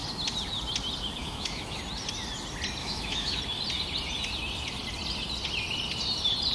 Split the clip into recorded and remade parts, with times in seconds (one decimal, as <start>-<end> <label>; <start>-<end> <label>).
0.0-1.2 recorded; 1.2-1.8 remade; 1.8-2.8 recorded; 2.8-3.4 remade; 3.4-6.5 recorded